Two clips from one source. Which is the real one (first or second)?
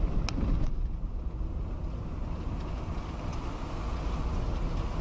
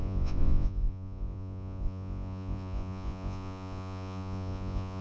first